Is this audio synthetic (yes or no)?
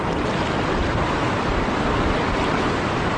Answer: no